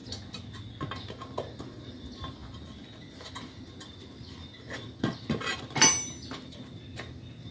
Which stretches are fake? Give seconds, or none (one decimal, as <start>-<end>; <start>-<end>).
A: none